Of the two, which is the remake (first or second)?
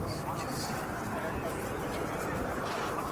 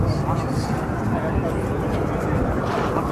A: first